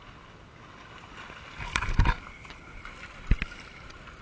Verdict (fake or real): real